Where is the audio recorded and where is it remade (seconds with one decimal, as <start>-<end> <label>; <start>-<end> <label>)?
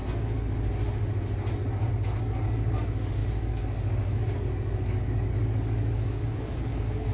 0.0-1.9 recorded; 1.9-7.1 remade